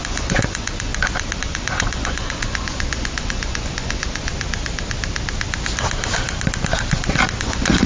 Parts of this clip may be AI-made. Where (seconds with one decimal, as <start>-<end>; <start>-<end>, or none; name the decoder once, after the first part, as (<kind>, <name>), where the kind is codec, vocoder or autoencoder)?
0.0-0.9 (vocoder, Vocos); 1.4-4.3; 7.4-7.9